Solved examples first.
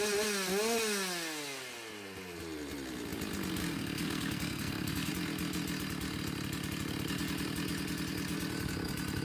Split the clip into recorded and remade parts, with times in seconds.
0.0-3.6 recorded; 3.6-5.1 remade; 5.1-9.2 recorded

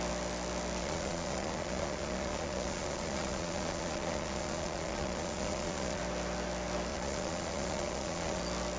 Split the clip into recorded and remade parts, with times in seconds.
0.0-0.8 recorded; 0.8-6.0 remade; 6.0-6.9 recorded; 6.9-8.4 remade; 8.4-8.8 recorded

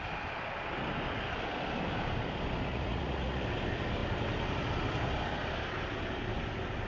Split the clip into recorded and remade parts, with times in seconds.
0.0-2.7 recorded; 2.7-3.4 remade; 3.4-6.9 recorded

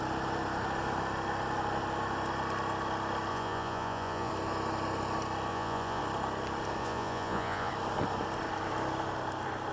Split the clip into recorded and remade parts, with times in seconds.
0.0-3.3 recorded; 3.3-4.3 remade; 4.3-5.5 recorded; 5.5-6.0 remade; 6.0-6.8 recorded; 6.8-7.7 remade; 7.7-9.7 recorded

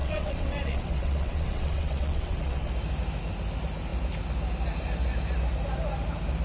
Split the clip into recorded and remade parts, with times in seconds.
0.0-2.7 remade; 2.7-6.4 recorded

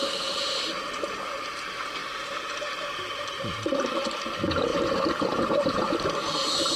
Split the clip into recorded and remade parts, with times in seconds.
0.0-6.8 remade